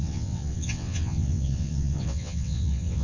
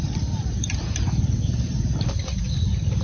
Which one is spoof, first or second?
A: first